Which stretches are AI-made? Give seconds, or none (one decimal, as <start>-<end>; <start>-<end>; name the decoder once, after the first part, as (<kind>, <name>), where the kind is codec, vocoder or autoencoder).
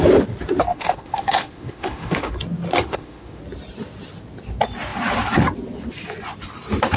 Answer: 0.7-2.3 (autoencoder, DAC-VAE); 2.9-3.4